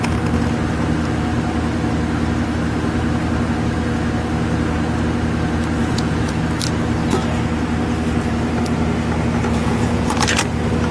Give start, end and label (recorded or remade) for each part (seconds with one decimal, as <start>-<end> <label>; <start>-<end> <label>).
0.0-5.8 recorded; 5.8-6.4 remade; 6.4-9.6 recorded; 9.6-10.1 remade; 10.1-10.9 recorded

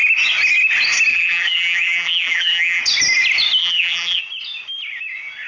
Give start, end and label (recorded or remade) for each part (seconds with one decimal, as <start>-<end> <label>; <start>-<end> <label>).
0.0-1.1 recorded; 1.1-2.8 remade; 2.8-3.6 recorded; 3.6-4.2 remade; 4.2-5.5 recorded

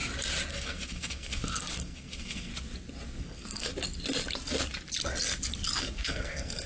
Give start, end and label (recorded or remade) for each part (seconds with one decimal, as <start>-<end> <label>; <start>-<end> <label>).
0.0-0.5 recorded; 0.5-2.5 remade; 2.5-3.2 recorded; 3.2-3.7 remade; 3.7-5.8 recorded; 5.8-6.7 remade

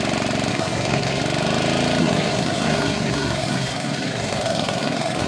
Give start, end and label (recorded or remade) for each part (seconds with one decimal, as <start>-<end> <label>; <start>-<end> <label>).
0.0-0.5 recorded; 0.5-1.2 remade; 1.2-2.0 recorded; 2.0-5.3 remade

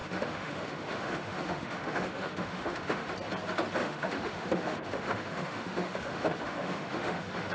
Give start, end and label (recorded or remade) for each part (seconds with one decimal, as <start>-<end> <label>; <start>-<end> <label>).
0.0-3.1 remade; 3.1-3.8 recorded; 3.8-7.5 remade

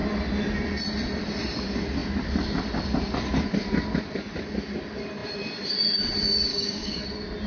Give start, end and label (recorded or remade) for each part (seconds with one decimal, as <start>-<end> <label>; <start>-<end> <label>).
0.0-6.5 recorded; 6.5-7.0 remade; 7.0-7.5 recorded

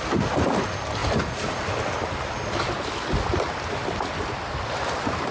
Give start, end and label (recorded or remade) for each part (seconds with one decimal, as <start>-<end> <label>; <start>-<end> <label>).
0.0-5.3 recorded